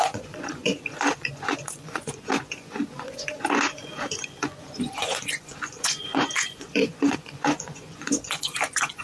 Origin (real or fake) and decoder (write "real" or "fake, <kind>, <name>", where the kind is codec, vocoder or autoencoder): fake, vocoder, Vocos